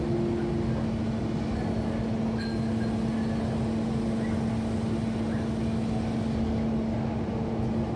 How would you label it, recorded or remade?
recorded